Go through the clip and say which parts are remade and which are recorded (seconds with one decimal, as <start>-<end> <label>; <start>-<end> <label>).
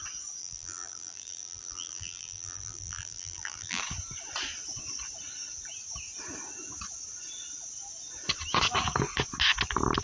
0.0-0.4 recorded; 0.4-3.8 remade; 3.8-10.0 recorded